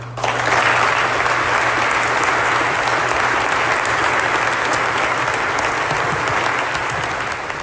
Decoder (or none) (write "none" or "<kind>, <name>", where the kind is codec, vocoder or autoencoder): none